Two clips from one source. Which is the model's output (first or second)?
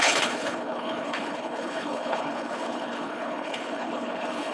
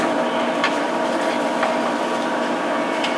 first